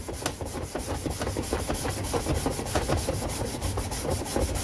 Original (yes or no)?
yes